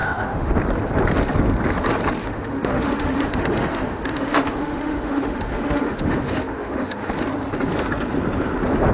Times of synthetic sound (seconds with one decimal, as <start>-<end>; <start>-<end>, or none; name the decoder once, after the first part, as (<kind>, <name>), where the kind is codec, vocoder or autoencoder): 0.0-0.5 (autoencoder, DAC-VAE); 2.2-7.1